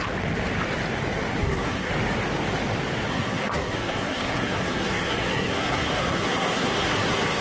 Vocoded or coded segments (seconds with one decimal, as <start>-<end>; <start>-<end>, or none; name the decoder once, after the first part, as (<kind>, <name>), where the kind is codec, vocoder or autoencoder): 1.4-1.9 (codec, SNAC); 3.1-7.4